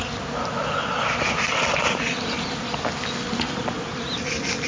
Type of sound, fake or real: real